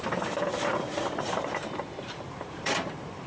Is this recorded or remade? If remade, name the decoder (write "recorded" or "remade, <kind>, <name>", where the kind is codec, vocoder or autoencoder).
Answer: remade, vocoder, BigVGAN v2